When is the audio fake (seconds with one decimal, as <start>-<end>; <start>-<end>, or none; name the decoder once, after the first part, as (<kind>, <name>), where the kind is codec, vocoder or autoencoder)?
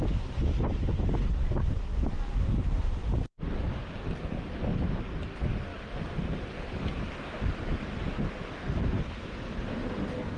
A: none